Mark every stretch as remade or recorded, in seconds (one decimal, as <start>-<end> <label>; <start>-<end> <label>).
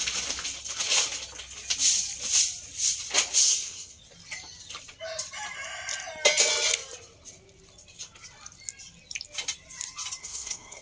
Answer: 0.0-3.4 recorded; 3.4-4.0 remade; 4.0-10.2 recorded; 10.2-10.8 remade